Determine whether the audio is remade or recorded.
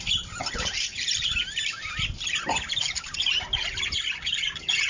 recorded